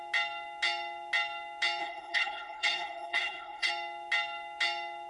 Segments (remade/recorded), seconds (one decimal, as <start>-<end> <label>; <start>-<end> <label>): 0.0-1.8 recorded; 1.8-3.7 remade; 3.7-5.1 recorded